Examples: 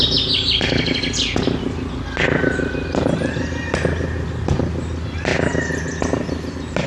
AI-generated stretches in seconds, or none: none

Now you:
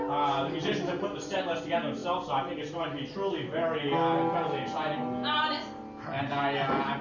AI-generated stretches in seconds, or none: none

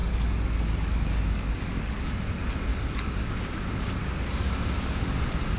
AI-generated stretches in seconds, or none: 0.0-2.2 (codec, DAC); 2.7-3.3; 4.0-4.5

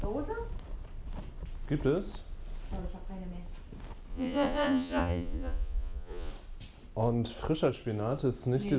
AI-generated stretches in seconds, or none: 4.1-6.3 (vocoder, Vocos)

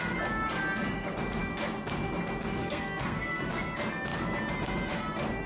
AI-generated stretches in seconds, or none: 2.6-3.5 (codec, SNAC)

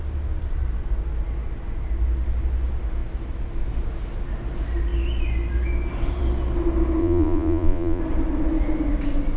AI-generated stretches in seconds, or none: 7.0-8.0 (vocoder, Vocos)

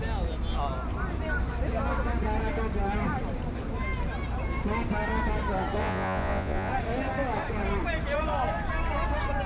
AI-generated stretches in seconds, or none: 5.8-6.7 (vocoder, Vocos)